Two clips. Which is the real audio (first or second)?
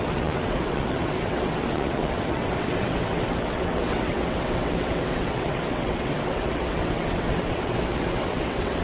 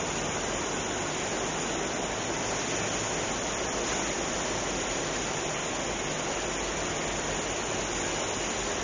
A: second